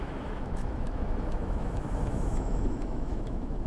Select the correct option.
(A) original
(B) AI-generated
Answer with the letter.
B